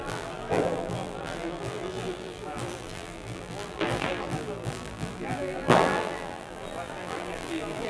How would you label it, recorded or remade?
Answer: remade